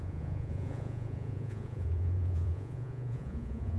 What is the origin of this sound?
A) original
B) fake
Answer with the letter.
B